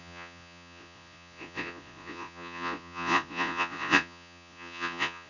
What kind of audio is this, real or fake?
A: fake